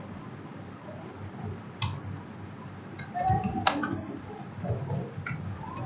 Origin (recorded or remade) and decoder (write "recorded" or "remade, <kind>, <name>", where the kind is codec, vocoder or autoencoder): recorded